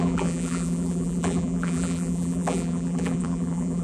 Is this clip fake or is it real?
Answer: fake